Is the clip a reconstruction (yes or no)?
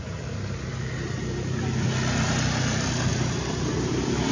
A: no